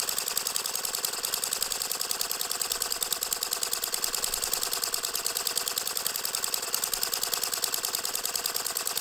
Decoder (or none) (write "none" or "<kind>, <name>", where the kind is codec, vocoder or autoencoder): none